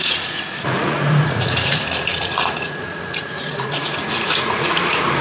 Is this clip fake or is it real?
fake